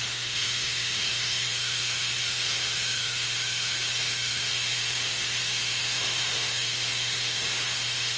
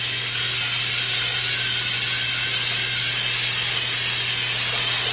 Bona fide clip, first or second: second